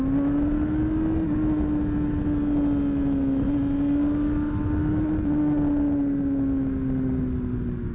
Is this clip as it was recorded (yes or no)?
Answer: yes